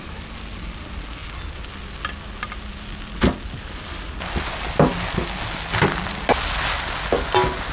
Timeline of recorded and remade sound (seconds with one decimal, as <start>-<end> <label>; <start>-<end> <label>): 0.0-7.7 recorded